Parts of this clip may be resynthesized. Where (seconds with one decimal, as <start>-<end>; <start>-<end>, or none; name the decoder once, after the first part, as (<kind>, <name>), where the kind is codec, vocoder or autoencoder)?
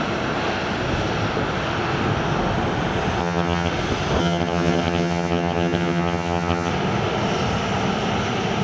3.2-3.7 (vocoder, HiFi-GAN); 4.2-6.7